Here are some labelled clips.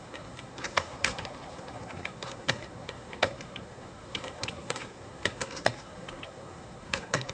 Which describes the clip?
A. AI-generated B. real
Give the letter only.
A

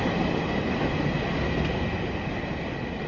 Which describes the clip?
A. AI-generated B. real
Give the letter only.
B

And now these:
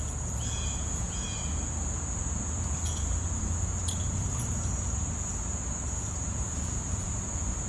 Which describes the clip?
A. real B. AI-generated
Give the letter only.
B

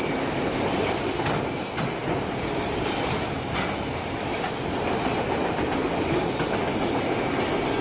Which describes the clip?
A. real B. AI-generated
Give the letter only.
A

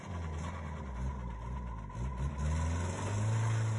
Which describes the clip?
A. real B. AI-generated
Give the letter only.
A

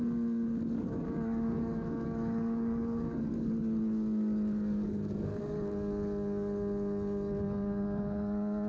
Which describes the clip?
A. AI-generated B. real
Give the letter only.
A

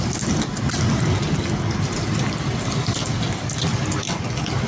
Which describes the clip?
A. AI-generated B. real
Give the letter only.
B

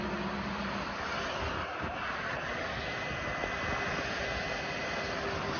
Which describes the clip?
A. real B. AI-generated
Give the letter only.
A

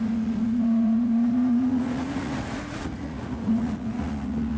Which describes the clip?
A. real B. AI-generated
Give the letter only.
B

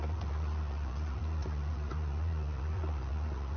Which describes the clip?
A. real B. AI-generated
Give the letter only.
B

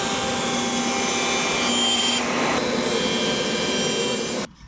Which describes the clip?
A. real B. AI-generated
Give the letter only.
A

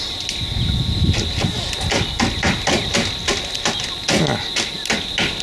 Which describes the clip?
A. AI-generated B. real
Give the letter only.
B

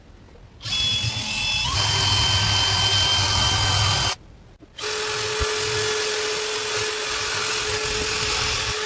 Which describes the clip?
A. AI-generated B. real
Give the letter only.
B